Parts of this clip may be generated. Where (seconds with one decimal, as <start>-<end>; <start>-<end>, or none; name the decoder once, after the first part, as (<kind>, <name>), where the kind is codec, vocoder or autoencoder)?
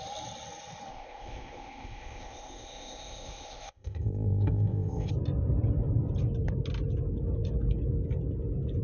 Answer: 0.9-5.1 (codec, ZipCodec)